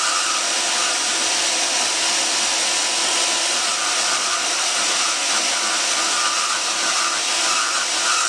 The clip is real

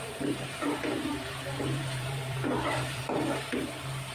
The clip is fake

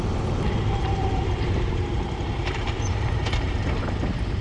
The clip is fake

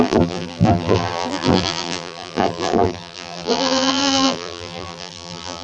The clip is fake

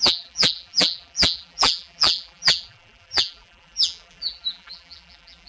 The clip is fake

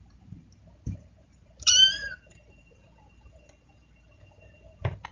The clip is fake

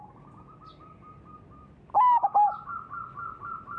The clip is real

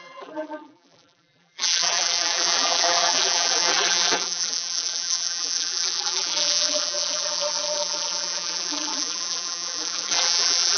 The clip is fake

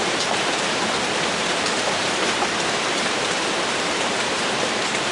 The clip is fake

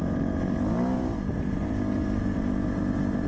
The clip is fake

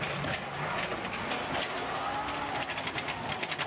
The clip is real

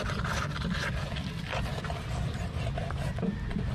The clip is real